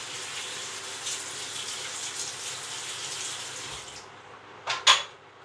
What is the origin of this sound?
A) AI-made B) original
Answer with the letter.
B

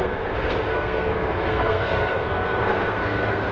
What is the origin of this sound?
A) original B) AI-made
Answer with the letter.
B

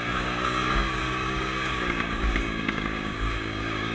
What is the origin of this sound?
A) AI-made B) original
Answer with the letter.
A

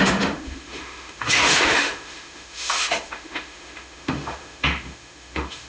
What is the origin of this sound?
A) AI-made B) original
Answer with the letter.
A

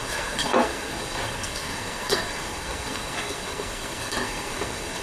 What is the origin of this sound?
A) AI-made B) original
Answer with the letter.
A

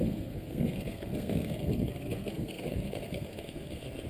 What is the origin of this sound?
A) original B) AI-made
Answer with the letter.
B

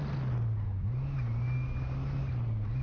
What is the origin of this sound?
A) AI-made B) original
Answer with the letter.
B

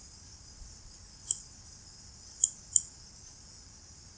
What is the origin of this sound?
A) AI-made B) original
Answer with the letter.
B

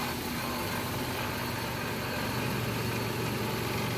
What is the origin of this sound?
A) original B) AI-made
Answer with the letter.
A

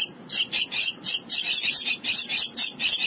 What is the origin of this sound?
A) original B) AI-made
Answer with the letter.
A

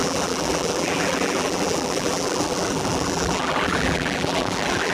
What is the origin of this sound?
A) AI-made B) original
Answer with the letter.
A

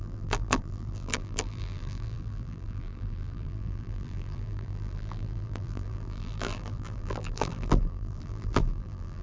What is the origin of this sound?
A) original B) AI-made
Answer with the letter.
B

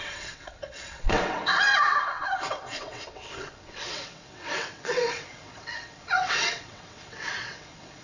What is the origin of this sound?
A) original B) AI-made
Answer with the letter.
B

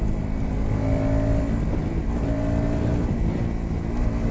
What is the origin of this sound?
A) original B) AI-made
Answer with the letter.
A